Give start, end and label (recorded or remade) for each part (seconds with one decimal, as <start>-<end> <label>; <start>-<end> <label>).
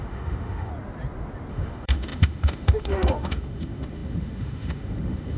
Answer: 0.0-0.7 remade; 0.7-1.5 recorded; 1.5-5.4 remade